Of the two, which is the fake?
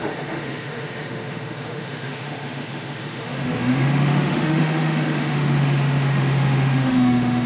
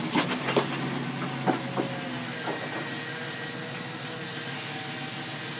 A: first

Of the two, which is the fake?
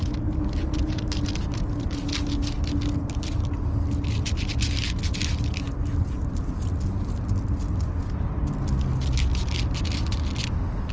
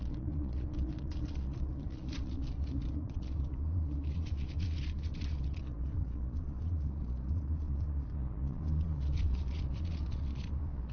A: second